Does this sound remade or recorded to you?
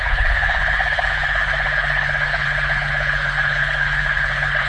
remade